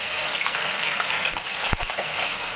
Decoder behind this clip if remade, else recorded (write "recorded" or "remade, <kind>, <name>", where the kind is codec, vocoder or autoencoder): remade, codec, SNAC